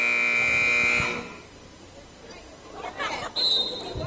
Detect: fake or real real